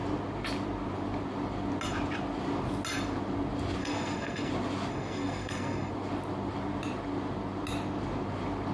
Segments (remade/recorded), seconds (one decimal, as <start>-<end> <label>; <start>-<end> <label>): 0.0-3.8 recorded; 3.8-4.5 remade; 4.5-4.9 recorded; 4.9-5.9 remade; 5.9-8.7 recorded